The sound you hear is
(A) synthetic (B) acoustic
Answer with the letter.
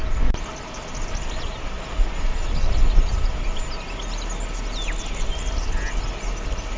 B